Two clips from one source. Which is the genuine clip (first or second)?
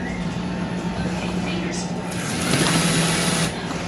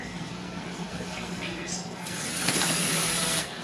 first